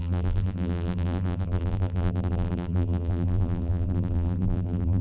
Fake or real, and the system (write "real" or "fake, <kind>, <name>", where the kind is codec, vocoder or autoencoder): fake, vocoder, BigVGAN v2